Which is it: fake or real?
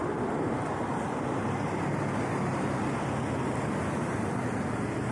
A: real